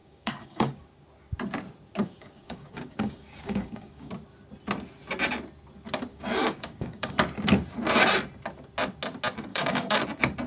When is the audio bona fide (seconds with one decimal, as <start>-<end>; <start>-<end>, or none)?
0.8-2.0; 4.1-6.1; 7.1-9.5; 10.0-10.5